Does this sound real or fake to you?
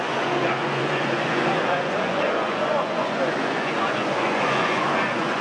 fake